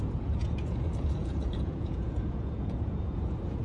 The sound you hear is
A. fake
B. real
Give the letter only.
A